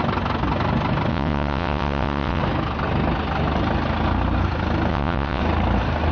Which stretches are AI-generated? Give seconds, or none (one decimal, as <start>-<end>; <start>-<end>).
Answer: 1.1-2.4; 4.9-5.4